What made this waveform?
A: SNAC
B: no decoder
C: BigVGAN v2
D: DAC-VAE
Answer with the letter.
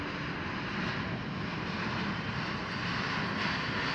B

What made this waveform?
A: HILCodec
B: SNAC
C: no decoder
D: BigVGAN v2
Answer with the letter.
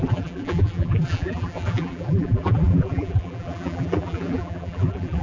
D